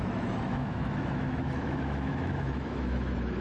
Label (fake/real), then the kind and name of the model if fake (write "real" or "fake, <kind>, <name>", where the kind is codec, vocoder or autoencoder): fake, autoencoder, DAC-VAE